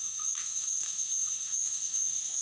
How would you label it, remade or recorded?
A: remade